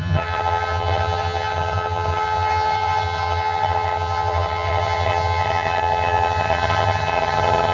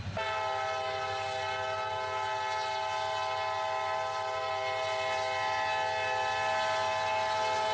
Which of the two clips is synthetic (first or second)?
first